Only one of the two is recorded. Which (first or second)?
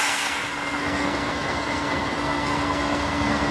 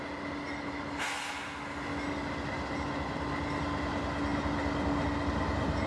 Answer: second